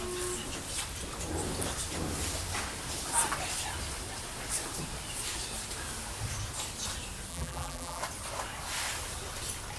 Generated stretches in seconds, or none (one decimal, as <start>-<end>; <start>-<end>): 7.3-8.0